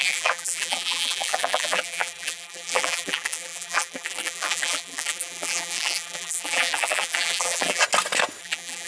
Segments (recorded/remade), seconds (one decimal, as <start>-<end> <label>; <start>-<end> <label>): 0.0-7.8 remade; 7.8-8.4 recorded; 8.4-8.9 remade